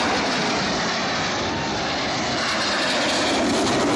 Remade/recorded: recorded